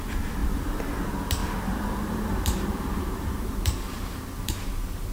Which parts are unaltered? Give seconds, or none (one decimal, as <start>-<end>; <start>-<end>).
0.0-0.4; 1.0-1.4; 4.5-5.1